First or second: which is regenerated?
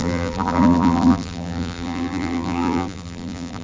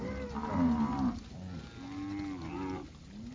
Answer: first